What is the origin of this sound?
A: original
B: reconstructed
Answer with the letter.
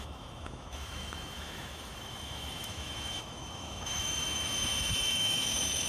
B